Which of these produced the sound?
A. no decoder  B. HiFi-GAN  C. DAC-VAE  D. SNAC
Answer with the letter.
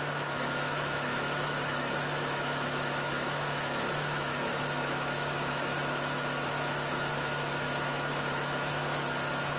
C